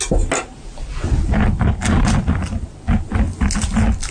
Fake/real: real